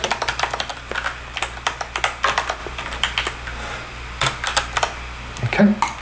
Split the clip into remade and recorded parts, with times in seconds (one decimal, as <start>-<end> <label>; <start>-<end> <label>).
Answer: 0.0-6.0 recorded